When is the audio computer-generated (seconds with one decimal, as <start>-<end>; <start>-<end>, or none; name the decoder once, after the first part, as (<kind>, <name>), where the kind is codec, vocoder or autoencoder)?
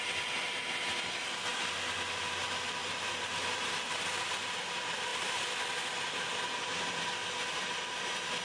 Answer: none